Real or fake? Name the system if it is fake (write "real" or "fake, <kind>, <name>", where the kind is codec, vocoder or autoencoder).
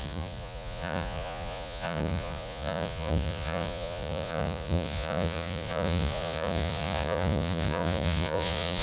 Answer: fake, vocoder, Vocos